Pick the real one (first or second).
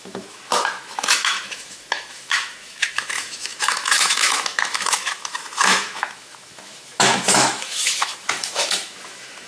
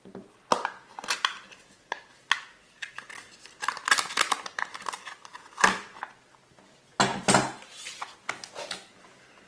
second